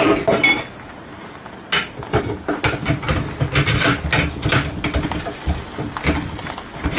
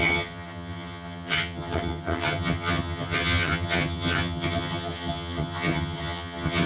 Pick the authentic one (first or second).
first